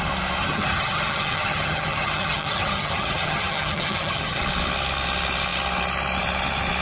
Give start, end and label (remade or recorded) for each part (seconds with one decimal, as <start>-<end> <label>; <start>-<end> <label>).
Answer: 0.0-0.4 recorded; 0.4-4.4 remade; 4.4-6.8 recorded